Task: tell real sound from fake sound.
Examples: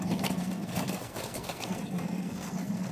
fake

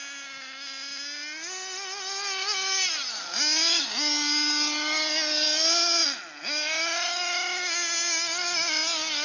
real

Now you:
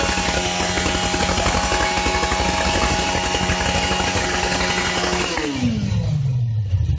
real